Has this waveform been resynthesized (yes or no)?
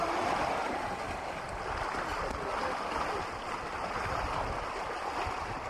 no